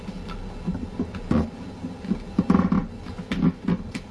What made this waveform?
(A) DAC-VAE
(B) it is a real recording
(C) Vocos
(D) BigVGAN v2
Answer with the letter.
B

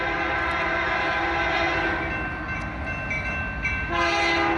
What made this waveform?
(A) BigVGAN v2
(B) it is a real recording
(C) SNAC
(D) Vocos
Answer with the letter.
B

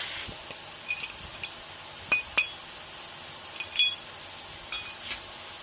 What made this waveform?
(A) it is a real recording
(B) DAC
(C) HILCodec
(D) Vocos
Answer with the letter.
A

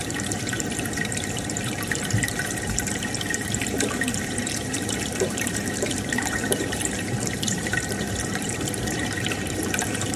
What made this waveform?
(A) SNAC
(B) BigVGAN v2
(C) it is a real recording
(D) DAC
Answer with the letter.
B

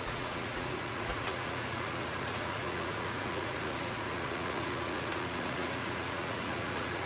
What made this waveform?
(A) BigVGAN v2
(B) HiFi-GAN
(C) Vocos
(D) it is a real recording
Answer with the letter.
C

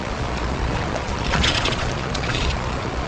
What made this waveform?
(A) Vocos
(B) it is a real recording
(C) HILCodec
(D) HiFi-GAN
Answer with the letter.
A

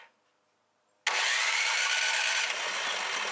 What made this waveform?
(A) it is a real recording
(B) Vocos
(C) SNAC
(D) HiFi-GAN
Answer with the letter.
A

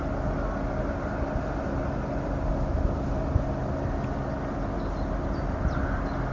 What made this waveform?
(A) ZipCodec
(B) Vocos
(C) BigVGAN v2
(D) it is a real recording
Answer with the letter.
D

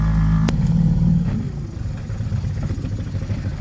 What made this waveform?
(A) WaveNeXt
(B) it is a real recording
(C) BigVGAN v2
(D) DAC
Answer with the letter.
B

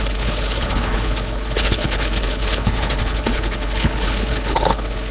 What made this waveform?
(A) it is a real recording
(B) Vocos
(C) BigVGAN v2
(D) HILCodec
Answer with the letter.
D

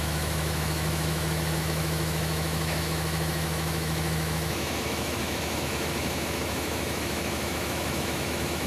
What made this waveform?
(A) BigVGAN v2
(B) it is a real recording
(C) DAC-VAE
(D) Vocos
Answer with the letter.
C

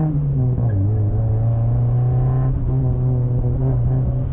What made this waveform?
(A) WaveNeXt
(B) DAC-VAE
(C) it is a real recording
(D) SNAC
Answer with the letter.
C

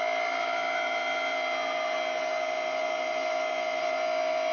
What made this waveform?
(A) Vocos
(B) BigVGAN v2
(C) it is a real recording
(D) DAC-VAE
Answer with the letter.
C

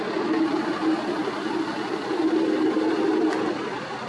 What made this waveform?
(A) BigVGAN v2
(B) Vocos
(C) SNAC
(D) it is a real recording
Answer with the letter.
D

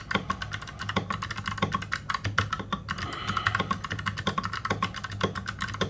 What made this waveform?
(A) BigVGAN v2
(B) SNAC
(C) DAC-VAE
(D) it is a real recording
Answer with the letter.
D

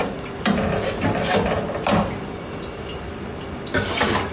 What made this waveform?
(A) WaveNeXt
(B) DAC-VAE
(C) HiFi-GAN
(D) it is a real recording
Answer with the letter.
D